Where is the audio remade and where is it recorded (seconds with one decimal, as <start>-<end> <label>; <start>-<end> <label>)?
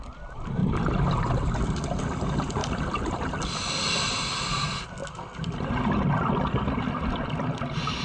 0.0-8.0 recorded